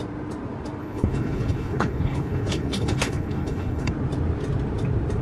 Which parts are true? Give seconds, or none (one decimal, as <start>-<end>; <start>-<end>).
0.0-0.8; 3.9-5.2

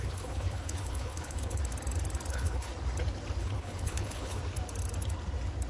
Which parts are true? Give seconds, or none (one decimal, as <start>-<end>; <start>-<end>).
1.6-2.3; 2.7-3.4; 4.4-5.7

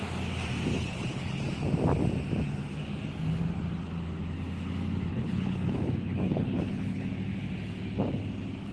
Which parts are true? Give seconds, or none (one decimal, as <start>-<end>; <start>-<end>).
0.0-0.7; 1.4-5.1; 7.1-8.7

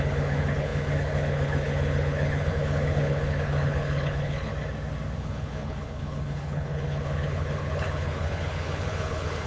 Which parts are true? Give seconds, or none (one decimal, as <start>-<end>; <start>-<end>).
4.5-5.2

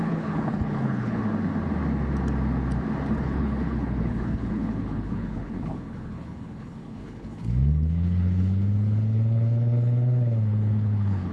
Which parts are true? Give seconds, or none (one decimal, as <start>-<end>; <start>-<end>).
1.2-3.2

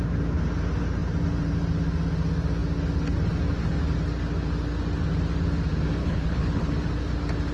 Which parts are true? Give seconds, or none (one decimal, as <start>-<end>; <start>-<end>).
0.0-6.0; 6.7-7.5

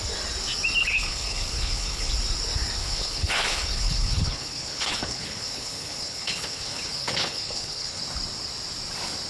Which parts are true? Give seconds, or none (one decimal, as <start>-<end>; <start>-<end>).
0.0-0.8; 2.1-2.8; 8.0-9.3